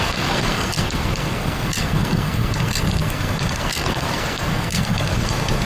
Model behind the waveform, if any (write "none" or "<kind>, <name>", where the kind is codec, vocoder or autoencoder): codec, SNAC